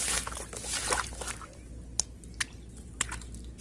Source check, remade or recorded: recorded